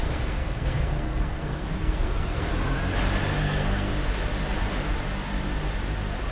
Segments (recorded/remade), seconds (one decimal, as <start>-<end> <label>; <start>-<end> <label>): 0.0-2.5 remade; 2.5-3.4 recorded; 3.4-3.9 remade; 3.9-6.3 recorded